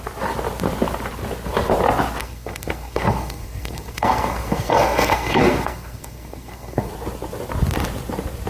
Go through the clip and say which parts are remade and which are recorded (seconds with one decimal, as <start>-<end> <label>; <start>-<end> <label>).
0.0-2.2 recorded; 2.2-6.9 remade; 6.9-8.5 recorded